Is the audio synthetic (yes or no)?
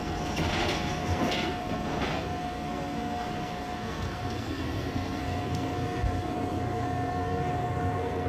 yes